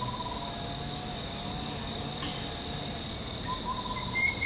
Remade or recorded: recorded